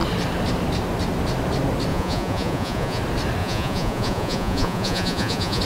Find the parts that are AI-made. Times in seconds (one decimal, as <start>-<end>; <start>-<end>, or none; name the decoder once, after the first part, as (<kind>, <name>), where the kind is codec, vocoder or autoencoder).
1.9-3.0 (vocoder, Vocos); 3.4-5.6